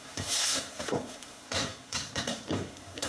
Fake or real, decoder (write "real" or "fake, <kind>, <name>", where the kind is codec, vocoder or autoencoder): fake, codec, SNAC